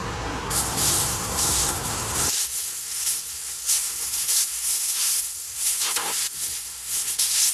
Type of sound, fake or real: fake